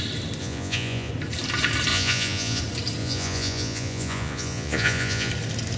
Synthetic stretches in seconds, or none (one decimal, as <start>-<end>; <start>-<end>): 0.4-1.1; 1.9-2.6; 3.0-5.3